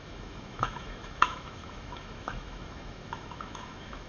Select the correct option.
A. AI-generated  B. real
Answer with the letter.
A